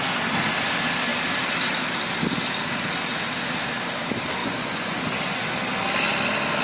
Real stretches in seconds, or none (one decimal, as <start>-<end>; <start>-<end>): 0.0-4.4; 5.4-6.6

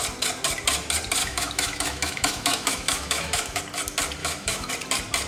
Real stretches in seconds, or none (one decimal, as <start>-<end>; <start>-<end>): 0.0-1.2; 3.6-4.2; 4.7-5.3

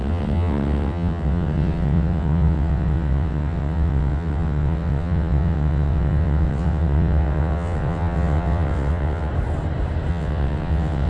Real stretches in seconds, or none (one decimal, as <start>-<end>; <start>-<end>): 9.3-10.1

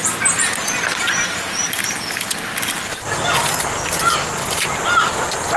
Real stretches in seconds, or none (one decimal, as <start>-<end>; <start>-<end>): 0.0-5.6

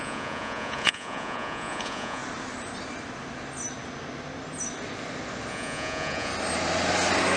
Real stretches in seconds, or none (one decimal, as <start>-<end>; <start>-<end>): 2.2-5.5; 6.3-7.4

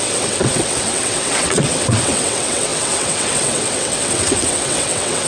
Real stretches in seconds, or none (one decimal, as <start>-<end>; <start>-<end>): none

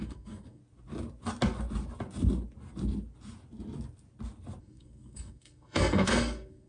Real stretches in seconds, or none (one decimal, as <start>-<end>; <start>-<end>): 0.6-4.6

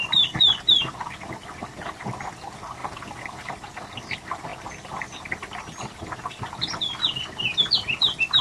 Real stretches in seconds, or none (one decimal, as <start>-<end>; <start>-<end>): 0.0-8.4